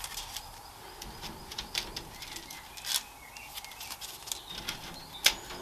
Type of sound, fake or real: real